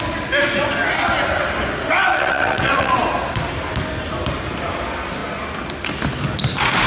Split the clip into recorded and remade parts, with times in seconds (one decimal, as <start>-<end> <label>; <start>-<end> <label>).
0.0-2.1 recorded; 2.1-3.0 remade; 3.0-6.9 recorded